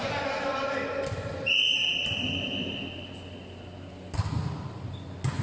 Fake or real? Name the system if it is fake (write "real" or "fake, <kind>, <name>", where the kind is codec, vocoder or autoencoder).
real